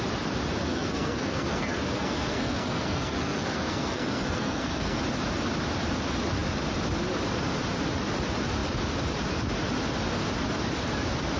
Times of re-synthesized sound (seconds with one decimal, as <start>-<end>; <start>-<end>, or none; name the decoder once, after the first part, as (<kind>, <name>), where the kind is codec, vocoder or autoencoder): 0.7-5.0 (codec, SNAC)